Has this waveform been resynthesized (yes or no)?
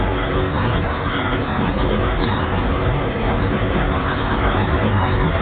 yes